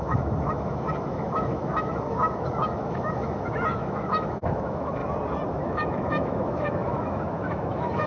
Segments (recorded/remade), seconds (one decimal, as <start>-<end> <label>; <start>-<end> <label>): 0.0-5.0 remade; 5.0-5.5 recorded; 5.5-8.1 remade